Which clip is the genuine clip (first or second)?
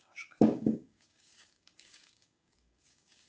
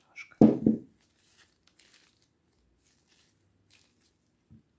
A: second